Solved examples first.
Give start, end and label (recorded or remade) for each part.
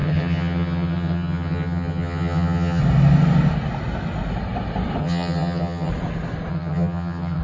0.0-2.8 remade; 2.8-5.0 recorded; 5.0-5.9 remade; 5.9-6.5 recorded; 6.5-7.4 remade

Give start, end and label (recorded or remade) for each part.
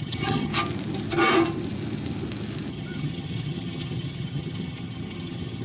0.0-0.5 remade; 0.5-2.7 recorded; 2.7-5.6 remade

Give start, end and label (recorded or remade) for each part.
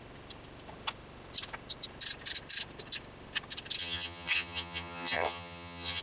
0.0-3.8 recorded; 3.8-6.0 remade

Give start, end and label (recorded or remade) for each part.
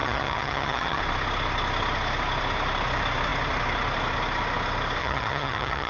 0.0-1.0 remade; 1.0-5.0 recorded; 5.0-5.9 remade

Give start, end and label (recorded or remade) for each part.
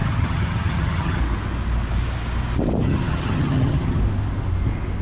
0.0-1.2 remade; 1.2-2.8 recorded; 2.8-4.0 remade; 4.0-5.0 recorded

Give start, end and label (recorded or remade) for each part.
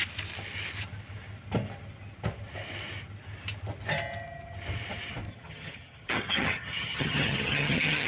0.0-5.3 recorded; 5.3-8.1 remade